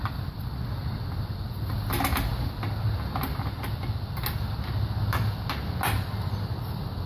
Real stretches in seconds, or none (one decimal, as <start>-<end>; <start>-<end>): 0.0-7.1